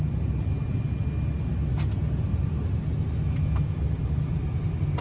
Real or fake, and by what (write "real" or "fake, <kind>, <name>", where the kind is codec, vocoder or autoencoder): real